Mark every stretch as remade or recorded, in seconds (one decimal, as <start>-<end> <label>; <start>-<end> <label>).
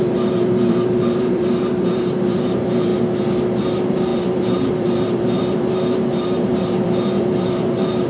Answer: 0.0-2.9 remade; 2.9-3.6 recorded; 3.6-8.1 remade